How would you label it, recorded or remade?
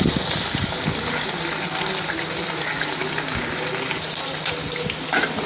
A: remade